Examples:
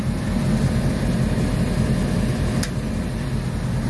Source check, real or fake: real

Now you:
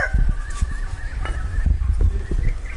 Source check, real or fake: real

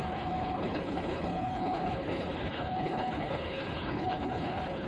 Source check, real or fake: fake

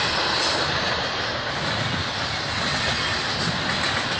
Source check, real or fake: real